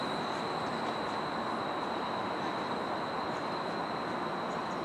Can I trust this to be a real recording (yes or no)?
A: yes